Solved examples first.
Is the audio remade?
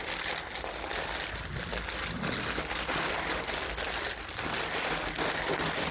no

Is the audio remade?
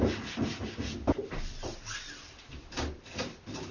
no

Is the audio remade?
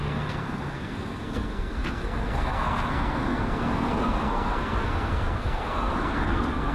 yes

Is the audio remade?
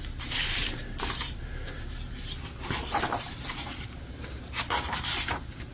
yes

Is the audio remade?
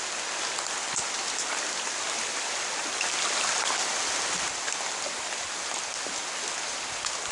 no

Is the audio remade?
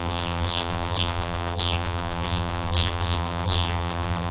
yes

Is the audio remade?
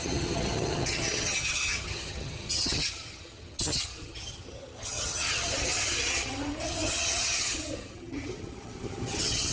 yes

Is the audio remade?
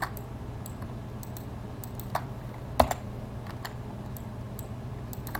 no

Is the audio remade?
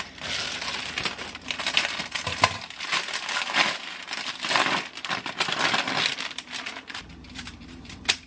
no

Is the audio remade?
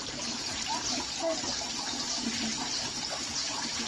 no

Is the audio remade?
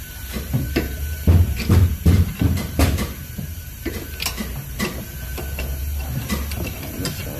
yes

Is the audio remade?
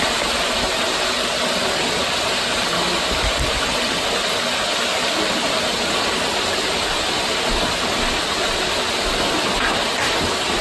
no